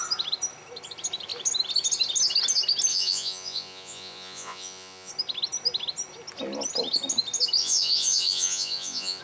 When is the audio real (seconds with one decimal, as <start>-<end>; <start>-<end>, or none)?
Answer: 0.0-2.9; 5.1-7.6